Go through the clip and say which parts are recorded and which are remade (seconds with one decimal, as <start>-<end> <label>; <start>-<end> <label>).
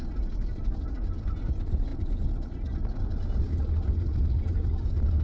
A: 0.0-5.2 recorded